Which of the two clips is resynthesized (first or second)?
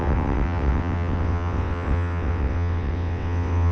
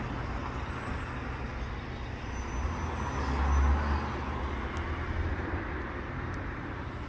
first